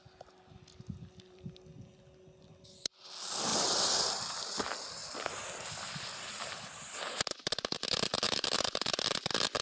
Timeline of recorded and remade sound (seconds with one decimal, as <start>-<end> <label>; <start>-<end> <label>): 0.0-9.6 recorded